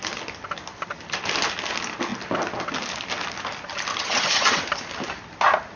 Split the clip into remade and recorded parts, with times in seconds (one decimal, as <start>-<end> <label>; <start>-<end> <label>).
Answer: 0.0-3.9 recorded; 3.9-4.6 remade; 4.6-5.8 recorded